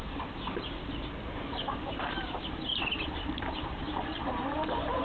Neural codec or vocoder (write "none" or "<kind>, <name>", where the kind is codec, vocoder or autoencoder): vocoder, BigVGAN v2